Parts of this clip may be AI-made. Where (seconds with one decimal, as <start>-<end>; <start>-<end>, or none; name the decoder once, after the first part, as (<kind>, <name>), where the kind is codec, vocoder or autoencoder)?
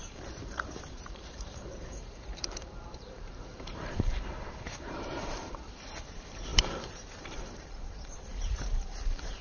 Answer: 0.0-9.4 (vocoder, BigVGAN v2)